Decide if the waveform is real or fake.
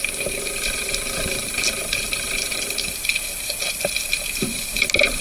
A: fake